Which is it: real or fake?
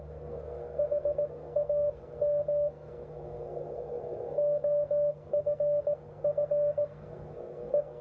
fake